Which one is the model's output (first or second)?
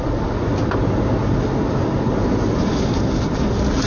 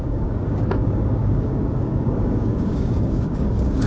second